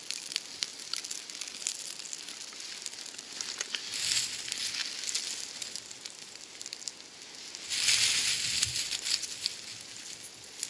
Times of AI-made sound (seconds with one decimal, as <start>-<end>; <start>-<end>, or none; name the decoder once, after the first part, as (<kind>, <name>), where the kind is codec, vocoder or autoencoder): 0.7-2.8 (vocoder, BigVGAN v2); 4.8-6.8